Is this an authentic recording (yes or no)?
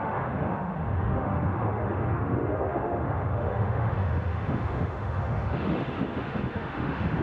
no